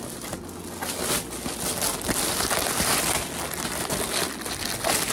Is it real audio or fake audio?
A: real